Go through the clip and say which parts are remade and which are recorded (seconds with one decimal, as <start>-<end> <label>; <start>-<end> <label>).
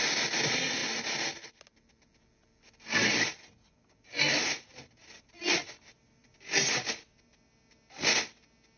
0.0-8.8 recorded